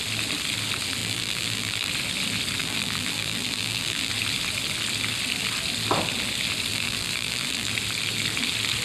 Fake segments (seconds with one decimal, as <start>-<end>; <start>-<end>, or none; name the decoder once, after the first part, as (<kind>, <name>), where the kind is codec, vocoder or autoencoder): 1.0-1.9 (vocoder, BigVGAN v2); 2.6-4.1; 6.7-7.7